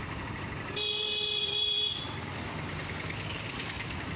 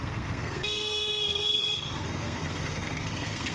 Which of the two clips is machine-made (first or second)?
second